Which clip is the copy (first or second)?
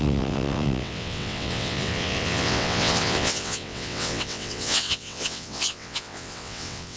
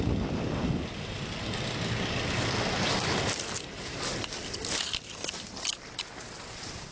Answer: first